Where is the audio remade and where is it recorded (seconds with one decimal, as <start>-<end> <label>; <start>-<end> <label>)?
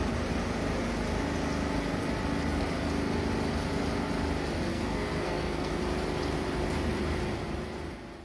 0.0-4.7 recorded; 4.7-5.8 remade; 5.8-8.2 recorded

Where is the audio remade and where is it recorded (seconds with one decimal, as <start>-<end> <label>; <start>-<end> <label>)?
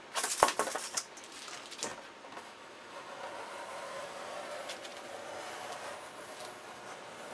0.0-7.3 recorded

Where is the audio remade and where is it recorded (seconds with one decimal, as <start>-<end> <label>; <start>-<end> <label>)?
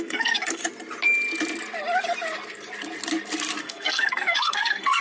0.0-0.6 remade; 0.6-3.6 recorded; 3.6-5.0 remade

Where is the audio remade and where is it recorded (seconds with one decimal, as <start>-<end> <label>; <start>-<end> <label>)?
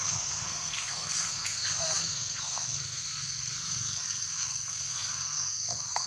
0.0-6.1 remade